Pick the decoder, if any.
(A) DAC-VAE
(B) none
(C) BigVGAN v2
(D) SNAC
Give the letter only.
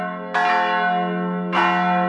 B